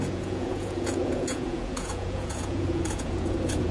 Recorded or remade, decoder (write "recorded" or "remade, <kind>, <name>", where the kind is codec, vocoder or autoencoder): remade, vocoder, Vocos